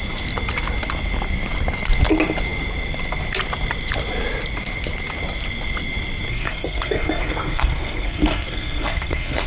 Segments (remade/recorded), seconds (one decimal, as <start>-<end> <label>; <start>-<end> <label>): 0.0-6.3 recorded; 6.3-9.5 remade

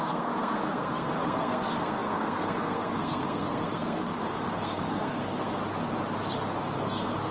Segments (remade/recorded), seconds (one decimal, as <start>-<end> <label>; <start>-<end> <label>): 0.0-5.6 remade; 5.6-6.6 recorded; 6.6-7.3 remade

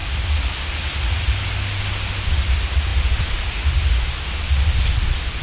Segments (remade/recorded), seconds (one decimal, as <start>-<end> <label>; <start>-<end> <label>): 0.0-5.4 recorded